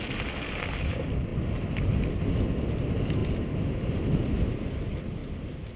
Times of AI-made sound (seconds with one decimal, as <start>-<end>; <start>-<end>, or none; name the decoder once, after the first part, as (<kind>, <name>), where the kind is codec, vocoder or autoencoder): none